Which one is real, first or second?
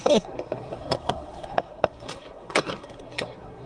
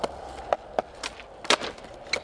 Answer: second